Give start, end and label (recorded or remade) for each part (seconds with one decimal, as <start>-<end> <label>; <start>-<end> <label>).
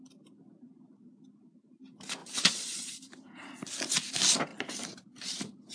0.0-2.2 recorded; 2.2-2.9 remade; 2.9-5.7 recorded